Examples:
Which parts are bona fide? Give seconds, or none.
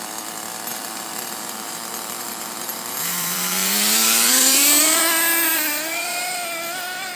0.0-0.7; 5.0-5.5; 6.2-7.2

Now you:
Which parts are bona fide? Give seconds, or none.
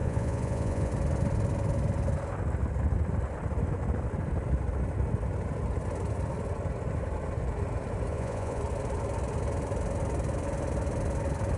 0.9-8.1; 8.6-11.6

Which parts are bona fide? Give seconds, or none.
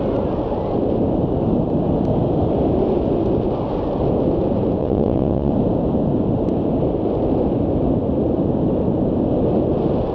0.0-4.8; 5.5-10.1